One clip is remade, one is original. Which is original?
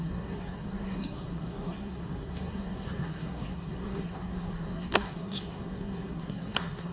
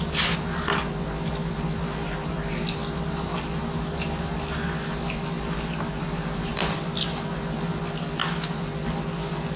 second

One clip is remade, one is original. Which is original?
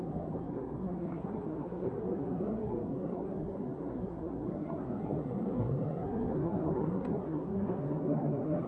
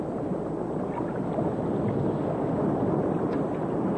second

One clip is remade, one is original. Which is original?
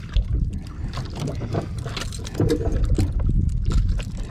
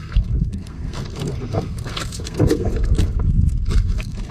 first